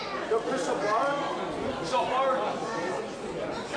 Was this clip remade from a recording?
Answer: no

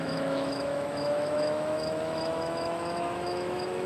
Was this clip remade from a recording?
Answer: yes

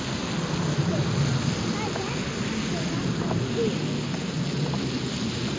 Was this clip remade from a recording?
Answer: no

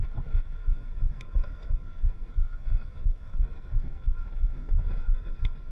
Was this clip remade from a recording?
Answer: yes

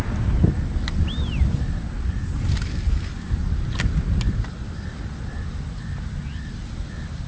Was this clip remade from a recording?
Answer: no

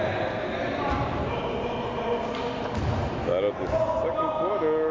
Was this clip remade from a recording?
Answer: no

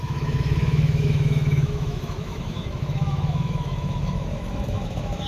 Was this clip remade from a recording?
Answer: yes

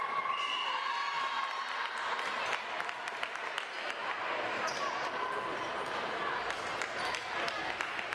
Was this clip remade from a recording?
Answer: no